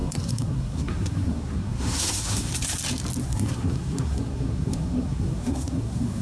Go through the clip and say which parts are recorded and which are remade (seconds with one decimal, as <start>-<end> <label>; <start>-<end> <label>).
0.0-2.5 remade; 2.5-3.2 recorded; 3.2-6.2 remade